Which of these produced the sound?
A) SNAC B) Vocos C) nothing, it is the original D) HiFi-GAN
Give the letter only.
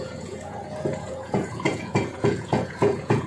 B